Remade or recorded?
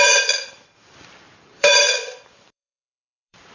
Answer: remade